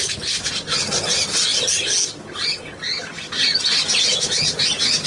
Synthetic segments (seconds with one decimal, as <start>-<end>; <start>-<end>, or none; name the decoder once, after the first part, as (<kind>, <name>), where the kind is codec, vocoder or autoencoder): none